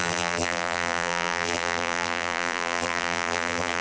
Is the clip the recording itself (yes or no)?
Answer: no